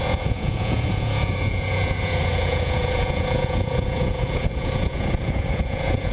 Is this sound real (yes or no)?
no